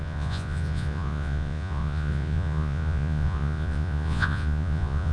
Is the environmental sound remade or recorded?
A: remade